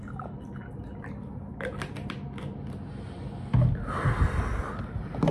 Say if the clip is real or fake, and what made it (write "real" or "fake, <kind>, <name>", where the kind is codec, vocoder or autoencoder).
real